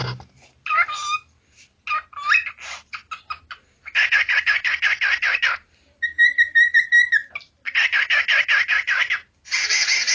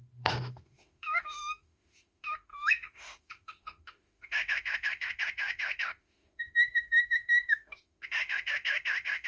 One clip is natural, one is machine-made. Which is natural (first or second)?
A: first